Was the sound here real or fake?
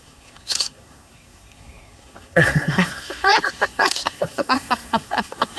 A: fake